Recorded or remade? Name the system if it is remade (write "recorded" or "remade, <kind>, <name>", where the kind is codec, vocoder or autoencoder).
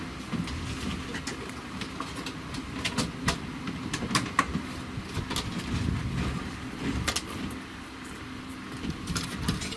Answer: recorded